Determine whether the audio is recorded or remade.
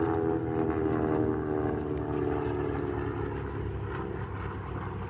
recorded